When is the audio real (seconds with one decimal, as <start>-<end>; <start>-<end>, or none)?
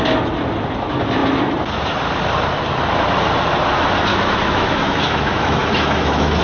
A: 0.0-4.1